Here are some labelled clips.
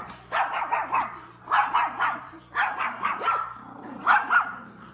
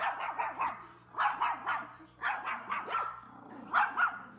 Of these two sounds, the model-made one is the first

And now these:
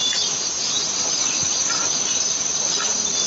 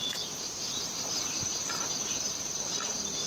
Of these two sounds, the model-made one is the second